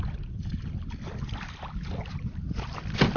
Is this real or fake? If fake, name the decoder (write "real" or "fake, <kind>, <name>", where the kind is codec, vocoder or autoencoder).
real